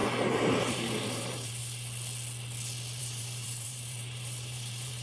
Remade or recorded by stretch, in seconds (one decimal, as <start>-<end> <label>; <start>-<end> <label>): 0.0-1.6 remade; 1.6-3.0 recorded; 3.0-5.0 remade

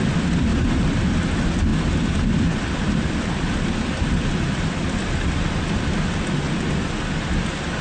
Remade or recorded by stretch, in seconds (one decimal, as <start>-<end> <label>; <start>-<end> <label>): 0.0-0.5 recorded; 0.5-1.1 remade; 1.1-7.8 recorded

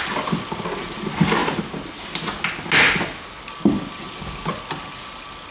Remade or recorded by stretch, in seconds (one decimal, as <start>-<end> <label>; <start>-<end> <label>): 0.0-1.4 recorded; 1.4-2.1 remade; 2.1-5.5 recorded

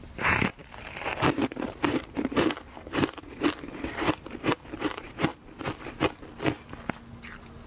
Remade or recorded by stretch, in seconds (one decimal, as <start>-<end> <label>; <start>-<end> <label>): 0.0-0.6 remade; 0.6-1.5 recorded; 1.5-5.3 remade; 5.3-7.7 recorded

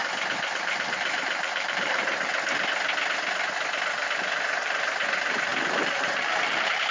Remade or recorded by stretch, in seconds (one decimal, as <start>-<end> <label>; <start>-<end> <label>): 0.0-0.6 recorded; 0.6-2.3 remade; 2.3-3.9 recorded; 3.9-6.9 remade

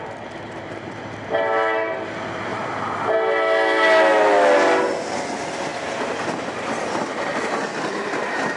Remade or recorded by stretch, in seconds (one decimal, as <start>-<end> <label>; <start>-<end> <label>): 0.0-2.5 recorded; 2.5-3.1 remade; 3.1-7.7 recorded; 7.7-8.6 remade

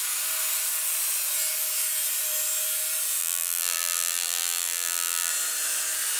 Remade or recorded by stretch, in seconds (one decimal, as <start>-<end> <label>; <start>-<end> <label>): 0.0-3.2 recorded; 3.2-5.3 remade; 5.3-6.2 recorded

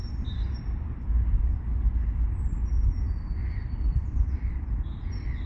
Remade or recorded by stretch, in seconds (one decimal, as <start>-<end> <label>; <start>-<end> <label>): 0.0-1.5 remade; 1.5-1.9 recorded; 1.9-2.7 remade; 2.7-3.4 recorded; 3.4-5.1 remade; 5.1-5.5 recorded